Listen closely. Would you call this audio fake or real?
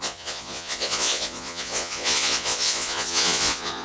fake